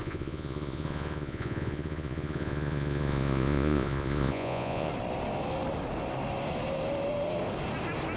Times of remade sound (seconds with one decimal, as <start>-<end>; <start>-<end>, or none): 0.0-4.9